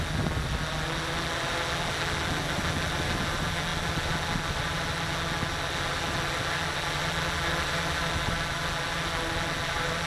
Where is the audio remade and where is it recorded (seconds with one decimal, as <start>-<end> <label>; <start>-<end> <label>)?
0.0-10.1 recorded